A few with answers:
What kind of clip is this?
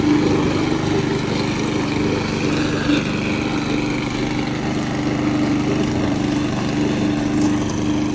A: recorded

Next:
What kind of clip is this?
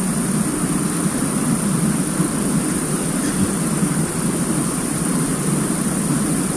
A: remade